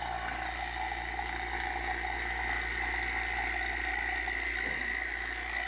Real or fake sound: real